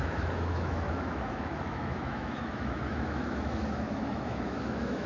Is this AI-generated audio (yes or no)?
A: yes